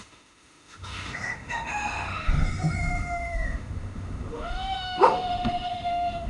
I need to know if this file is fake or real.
fake